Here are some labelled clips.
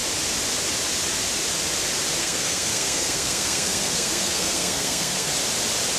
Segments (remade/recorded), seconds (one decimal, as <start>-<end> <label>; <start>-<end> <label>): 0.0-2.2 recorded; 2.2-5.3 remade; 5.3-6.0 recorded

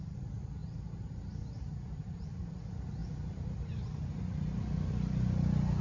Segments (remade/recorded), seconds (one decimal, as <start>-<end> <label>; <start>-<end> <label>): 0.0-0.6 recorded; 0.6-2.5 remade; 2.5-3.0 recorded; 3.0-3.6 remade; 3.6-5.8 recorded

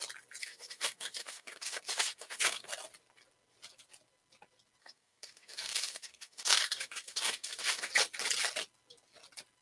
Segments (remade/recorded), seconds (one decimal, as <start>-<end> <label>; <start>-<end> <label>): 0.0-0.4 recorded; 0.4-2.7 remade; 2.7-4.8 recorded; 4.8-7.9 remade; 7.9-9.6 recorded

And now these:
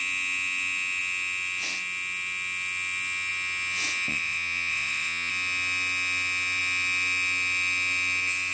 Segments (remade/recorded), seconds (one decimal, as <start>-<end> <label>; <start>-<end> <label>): 0.0-4.1 recorded; 4.1-5.3 remade; 5.3-8.5 recorded